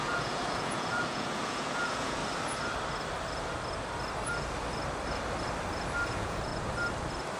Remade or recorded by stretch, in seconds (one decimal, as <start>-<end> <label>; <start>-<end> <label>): 0.0-2.2 remade; 2.2-6.1 recorded; 6.1-6.5 remade; 6.5-7.4 recorded